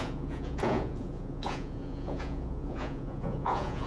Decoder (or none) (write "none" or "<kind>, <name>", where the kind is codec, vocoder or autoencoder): vocoder, Vocos